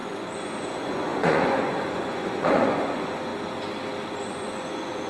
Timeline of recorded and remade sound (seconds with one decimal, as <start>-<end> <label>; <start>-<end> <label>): 0.0-3.3 remade; 3.3-4.1 recorded; 4.1-5.1 remade